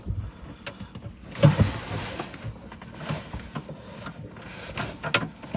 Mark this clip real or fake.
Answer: real